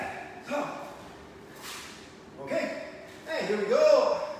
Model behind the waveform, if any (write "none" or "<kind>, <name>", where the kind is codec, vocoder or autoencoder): none